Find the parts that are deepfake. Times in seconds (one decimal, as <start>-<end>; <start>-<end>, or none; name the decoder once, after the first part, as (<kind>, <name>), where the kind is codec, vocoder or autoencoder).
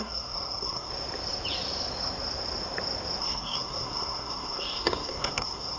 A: 0.0-0.9 (codec, SNAC); 3.2-5.8